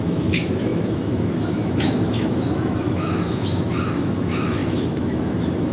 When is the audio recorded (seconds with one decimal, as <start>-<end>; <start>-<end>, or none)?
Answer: none

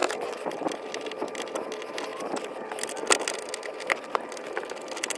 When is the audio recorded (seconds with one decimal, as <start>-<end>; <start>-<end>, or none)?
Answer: 0.0-5.2

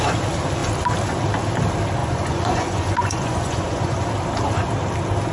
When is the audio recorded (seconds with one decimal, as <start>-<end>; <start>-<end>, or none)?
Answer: 0.0-2.0; 4.1-5.3

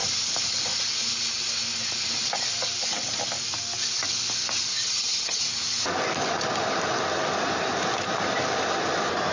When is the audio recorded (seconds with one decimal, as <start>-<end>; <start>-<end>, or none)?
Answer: 0.0-4.7; 5.4-9.3

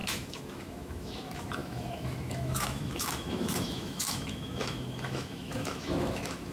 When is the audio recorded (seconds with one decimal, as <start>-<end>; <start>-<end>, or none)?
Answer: none

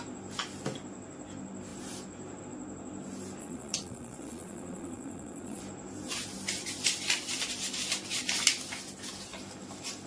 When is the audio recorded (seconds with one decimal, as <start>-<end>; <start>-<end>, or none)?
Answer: 0.0-3.4; 5.6-10.1